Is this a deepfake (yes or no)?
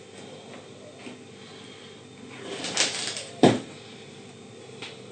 no